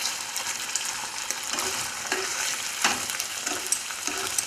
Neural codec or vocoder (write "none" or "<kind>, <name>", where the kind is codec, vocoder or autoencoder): none